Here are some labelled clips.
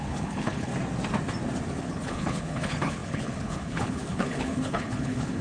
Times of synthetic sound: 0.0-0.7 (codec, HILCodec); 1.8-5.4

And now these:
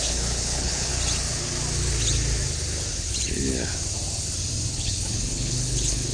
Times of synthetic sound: 0.0-0.9 (codec, HILCodec); 2.9-3.7; 4.7-6.1

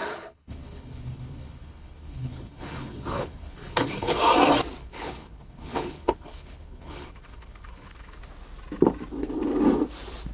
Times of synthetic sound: 0.0-4.2 (codec, HILCodec); 4.8-8.2